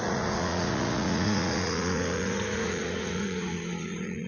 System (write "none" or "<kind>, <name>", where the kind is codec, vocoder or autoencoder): vocoder, Vocos